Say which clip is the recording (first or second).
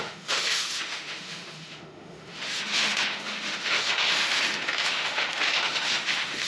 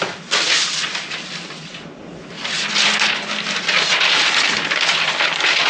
second